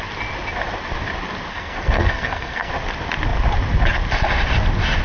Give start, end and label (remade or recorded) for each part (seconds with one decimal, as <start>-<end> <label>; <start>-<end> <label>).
0.0-1.5 recorded; 1.5-2.7 remade; 2.7-5.0 recorded